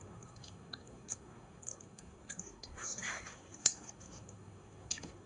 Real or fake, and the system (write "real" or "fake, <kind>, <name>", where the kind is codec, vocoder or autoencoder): fake, codec, SNAC